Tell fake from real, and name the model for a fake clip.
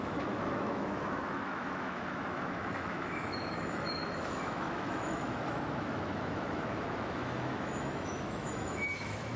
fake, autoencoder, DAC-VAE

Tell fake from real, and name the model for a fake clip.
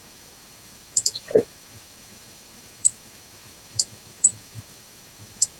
fake, autoencoder, DAC-VAE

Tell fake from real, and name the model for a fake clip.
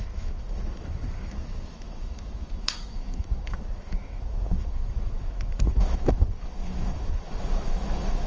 fake, autoencoder, DAC-VAE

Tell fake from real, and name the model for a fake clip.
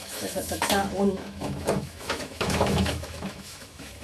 fake, autoencoder, DAC-VAE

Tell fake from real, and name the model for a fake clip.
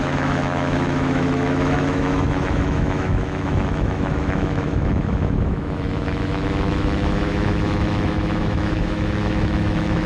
fake, autoencoder, DAC-VAE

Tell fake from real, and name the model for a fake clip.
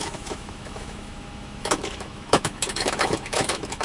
fake, autoencoder, DAC-VAE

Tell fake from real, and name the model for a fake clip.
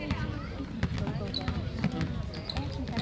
real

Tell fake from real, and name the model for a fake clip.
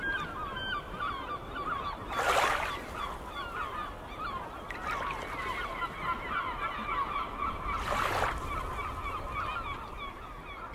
real